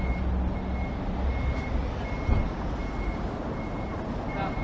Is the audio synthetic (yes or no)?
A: no